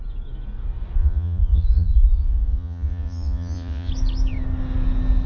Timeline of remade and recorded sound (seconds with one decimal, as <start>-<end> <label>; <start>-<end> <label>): 0.0-1.0 recorded; 1.0-3.9 remade; 3.9-5.3 recorded